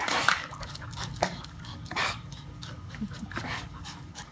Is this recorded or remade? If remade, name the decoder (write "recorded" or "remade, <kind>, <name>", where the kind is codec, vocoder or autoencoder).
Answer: remade, codec, DAC